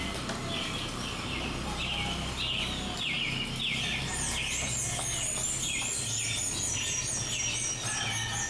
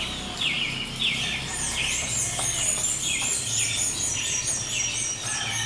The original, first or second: first